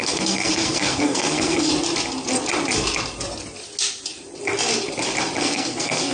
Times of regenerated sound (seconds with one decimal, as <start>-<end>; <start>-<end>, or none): 0.0-1.7; 5.4-6.1